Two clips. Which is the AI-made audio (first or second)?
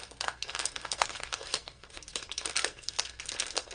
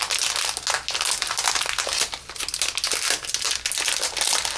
first